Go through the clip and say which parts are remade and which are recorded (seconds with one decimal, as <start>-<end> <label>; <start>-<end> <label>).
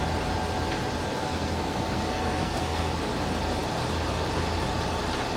0.0-1.2 recorded; 1.2-3.1 remade; 3.1-5.4 recorded